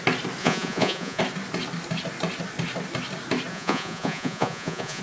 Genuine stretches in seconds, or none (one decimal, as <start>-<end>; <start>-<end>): 0.0-0.4; 1.2-3.5